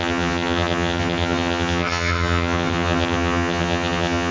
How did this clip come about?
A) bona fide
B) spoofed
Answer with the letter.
B